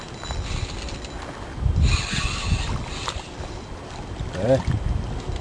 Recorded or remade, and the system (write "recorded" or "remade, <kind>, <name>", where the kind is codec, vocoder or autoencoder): recorded